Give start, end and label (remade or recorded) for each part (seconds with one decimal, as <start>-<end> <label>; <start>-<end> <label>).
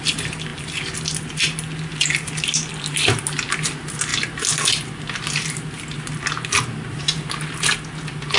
0.0-8.4 recorded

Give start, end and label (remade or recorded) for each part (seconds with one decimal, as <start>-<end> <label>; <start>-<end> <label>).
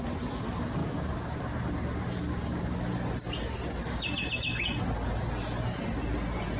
0.0-6.6 recorded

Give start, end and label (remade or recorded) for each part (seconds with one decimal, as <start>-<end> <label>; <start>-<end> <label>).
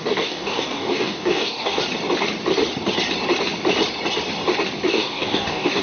0.0-1.8 remade; 1.8-4.9 recorded; 4.9-5.8 remade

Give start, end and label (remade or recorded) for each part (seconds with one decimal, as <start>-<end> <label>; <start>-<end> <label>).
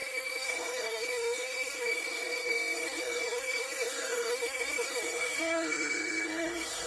0.0-6.9 remade